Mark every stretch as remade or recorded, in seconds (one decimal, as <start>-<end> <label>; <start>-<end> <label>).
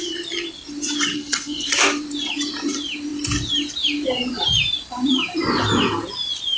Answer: 0.0-1.1 recorded; 1.1-1.7 remade; 1.7-6.6 recorded